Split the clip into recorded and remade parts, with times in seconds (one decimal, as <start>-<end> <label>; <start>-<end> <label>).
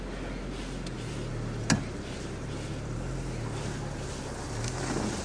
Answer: 0.0-5.2 recorded